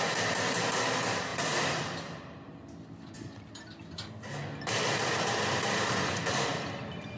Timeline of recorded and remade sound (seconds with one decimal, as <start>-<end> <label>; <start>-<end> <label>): 0.0-7.2 recorded